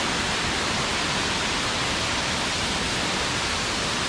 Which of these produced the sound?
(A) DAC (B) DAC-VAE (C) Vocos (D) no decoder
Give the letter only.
D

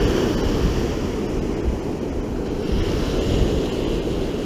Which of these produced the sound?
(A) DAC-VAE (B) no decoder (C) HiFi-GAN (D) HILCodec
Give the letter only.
B